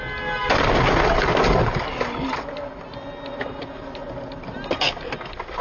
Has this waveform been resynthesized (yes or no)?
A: no